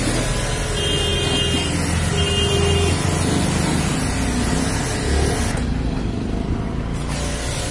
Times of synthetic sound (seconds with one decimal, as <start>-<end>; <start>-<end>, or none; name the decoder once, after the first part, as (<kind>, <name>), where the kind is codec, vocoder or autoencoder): none